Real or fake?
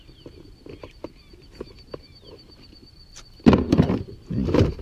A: real